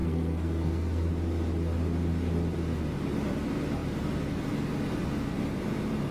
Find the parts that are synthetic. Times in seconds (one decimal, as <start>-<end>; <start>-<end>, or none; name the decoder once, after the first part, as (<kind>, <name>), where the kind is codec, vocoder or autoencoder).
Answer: 0.0-1.1 (codec, SNAC)

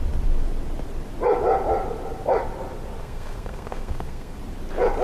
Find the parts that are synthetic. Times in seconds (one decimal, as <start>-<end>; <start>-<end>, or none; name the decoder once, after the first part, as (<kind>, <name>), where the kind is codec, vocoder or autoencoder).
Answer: 3.0-4.4 (codec, SNAC)

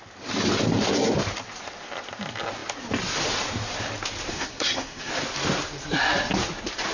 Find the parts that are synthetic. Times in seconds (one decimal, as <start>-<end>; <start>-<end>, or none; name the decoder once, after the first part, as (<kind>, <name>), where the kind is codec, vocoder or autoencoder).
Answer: 4.3-5.1 (codec, SNAC)

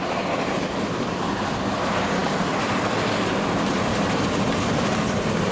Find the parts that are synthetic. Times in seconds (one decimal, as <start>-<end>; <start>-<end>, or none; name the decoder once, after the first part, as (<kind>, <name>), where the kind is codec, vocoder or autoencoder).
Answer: none

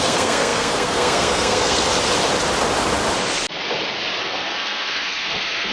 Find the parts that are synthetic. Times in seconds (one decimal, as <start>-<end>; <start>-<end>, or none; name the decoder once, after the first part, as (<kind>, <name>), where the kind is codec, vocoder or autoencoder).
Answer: 0.0-1.9 (codec, SNAC); 4.2-5.7

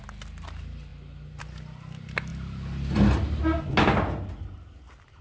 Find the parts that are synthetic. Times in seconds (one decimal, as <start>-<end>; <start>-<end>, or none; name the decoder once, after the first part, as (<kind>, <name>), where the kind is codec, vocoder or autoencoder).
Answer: none